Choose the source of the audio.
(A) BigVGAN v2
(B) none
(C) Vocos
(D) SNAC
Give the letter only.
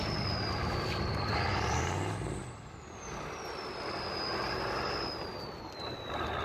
B